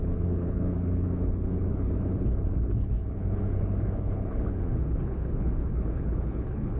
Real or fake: fake